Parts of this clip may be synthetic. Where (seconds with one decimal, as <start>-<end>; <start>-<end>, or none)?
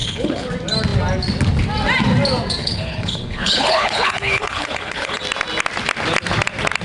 0.0-0.5; 2.6-5.2